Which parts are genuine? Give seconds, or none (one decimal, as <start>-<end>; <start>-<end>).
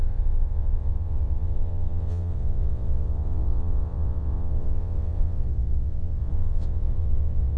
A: none